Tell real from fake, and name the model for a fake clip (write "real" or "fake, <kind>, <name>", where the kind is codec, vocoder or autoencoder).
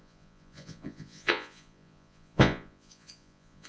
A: fake, vocoder, Vocos